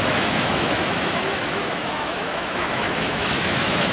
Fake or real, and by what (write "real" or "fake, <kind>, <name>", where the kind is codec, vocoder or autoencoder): fake, autoencoder, DAC-VAE